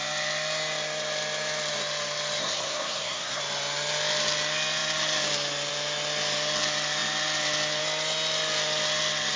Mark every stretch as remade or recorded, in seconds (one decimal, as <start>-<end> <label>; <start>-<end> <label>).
0.0-2.4 recorded; 2.4-3.4 remade; 3.4-9.4 recorded